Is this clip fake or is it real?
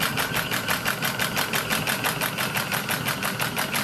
real